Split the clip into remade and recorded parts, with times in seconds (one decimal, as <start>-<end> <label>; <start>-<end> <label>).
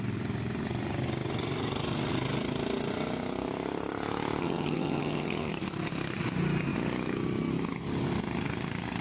0.0-4.4 recorded; 4.4-5.5 remade; 5.5-9.0 recorded